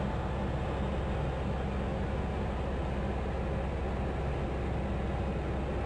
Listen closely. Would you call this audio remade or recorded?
recorded